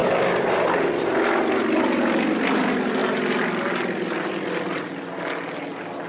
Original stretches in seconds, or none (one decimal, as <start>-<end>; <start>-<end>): 0.0-6.1